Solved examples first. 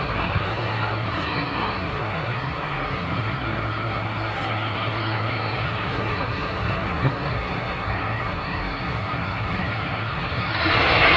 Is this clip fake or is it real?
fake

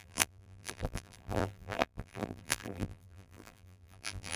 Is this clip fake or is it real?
fake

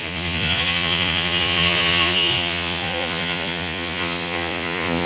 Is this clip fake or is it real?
fake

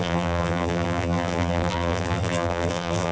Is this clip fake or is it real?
fake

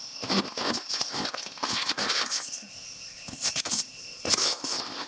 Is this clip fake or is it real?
fake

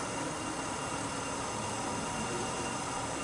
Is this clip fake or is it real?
real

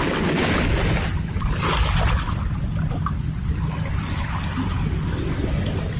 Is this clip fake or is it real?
real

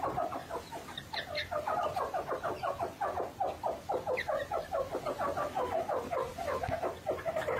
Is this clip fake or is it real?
real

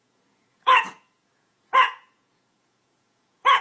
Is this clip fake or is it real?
fake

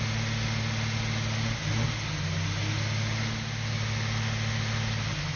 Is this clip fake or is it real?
real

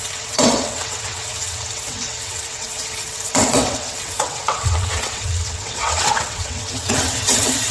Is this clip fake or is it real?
fake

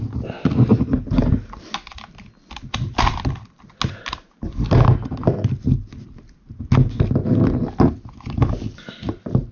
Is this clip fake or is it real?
real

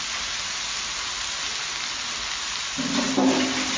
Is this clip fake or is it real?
real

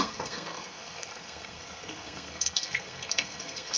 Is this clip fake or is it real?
fake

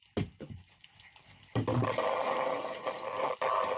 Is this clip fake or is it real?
real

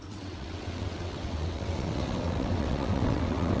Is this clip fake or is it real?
fake